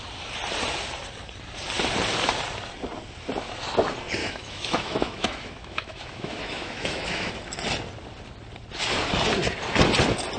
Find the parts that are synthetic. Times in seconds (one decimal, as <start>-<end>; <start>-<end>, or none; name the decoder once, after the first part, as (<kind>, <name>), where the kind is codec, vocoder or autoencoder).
4.2-7.3 (autoencoder, DAC-VAE)